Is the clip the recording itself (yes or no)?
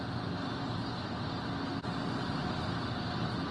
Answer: yes